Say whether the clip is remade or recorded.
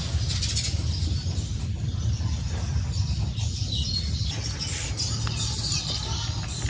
recorded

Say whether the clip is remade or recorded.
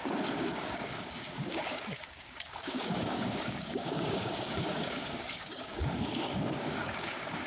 remade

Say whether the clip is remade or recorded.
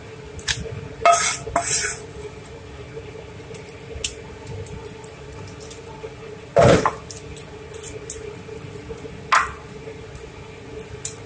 recorded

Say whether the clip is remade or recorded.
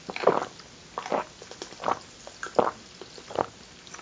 recorded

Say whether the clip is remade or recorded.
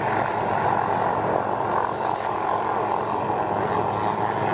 recorded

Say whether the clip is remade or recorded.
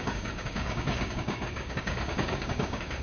remade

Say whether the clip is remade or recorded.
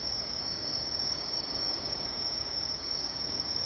remade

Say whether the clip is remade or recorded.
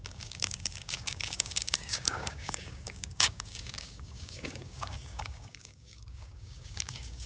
remade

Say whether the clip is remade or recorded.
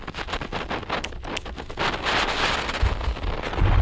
recorded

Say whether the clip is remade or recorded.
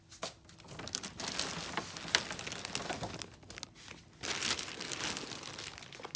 recorded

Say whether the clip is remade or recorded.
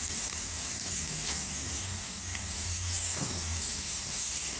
remade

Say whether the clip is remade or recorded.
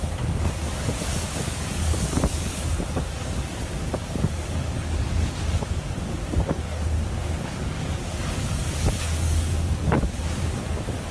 remade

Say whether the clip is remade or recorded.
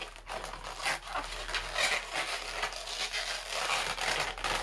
recorded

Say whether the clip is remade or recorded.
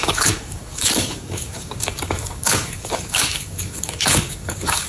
remade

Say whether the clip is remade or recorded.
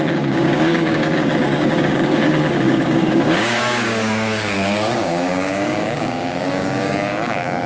remade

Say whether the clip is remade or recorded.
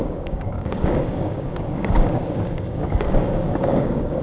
remade